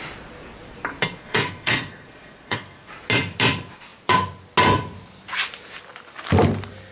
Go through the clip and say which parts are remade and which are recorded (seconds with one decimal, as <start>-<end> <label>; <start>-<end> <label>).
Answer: 0.0-1.2 recorded; 1.2-2.9 remade; 2.9-6.9 recorded